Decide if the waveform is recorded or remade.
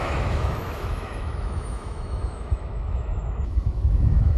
remade